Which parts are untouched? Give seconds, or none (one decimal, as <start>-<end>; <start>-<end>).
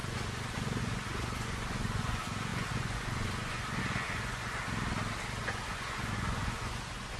4.6-5.4